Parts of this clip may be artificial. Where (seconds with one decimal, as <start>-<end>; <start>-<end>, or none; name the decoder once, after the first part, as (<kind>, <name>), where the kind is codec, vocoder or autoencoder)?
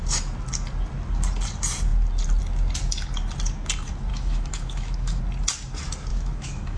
4.1-5.2 (autoencoder, DAC-VAE); 6.1-6.8